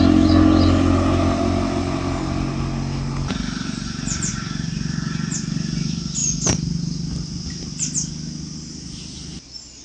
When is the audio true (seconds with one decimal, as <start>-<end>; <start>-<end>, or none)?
0.0-9.8